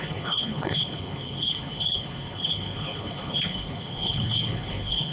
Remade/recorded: remade